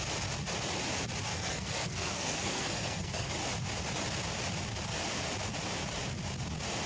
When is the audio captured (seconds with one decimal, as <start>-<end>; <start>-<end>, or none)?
0.0-1.3; 3.3-6.9